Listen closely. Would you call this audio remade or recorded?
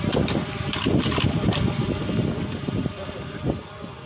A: recorded